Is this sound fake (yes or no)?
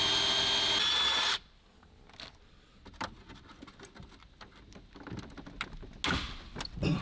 no